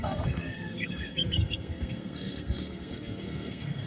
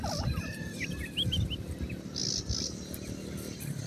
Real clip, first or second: second